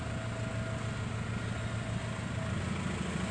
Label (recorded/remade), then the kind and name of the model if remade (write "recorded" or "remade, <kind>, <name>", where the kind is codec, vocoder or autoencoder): recorded